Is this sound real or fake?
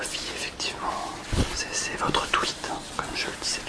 real